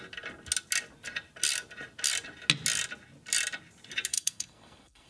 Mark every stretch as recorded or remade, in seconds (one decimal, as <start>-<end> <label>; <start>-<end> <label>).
0.0-4.1 recorded; 4.1-5.1 remade